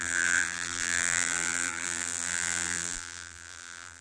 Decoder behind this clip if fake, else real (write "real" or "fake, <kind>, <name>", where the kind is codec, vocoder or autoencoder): fake, vocoder, BigVGAN v2